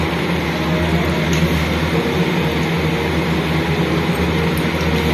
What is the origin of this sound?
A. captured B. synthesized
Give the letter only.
A